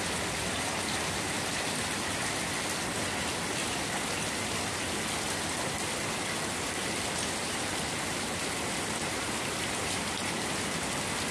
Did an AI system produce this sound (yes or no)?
no